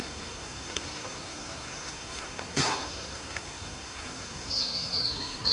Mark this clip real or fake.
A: fake